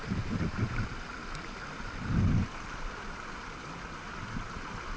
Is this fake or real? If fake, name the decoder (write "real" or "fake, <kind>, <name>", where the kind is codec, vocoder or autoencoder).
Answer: real